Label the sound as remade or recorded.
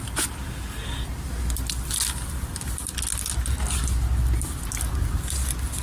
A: recorded